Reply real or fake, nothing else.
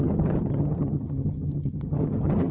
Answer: fake